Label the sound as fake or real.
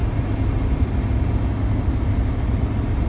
real